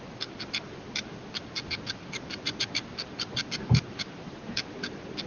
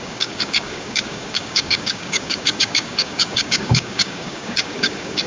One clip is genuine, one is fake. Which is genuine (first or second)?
first